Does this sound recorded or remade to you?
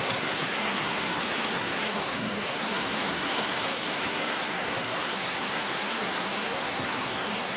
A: remade